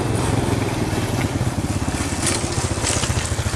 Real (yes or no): yes